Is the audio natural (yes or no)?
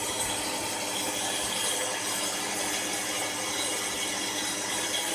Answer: yes